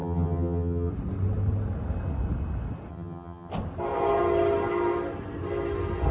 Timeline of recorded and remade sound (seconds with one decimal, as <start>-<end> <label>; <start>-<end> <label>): 0.0-0.9 remade; 0.9-2.9 recorded; 2.9-3.5 remade; 3.5-6.1 recorded